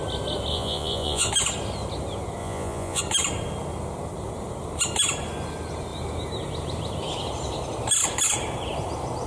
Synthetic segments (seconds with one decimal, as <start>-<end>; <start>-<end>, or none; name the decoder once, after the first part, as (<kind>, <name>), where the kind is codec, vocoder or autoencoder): 0.5-1.3 (vocoder, Vocos); 2.4-3.0